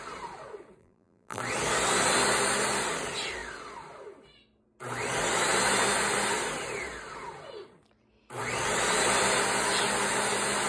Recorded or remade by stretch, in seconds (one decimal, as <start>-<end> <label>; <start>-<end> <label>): 0.0-0.8 recorded; 0.8-1.4 remade; 1.4-10.7 recorded